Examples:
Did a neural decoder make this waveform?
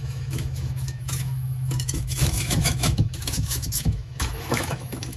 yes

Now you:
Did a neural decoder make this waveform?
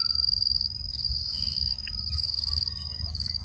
yes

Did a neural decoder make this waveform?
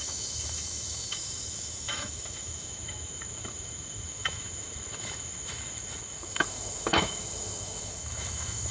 yes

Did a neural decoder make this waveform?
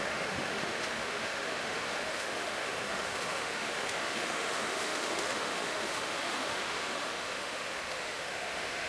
yes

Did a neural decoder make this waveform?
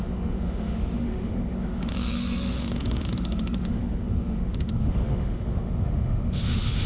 yes